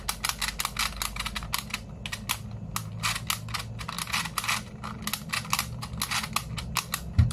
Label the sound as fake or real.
real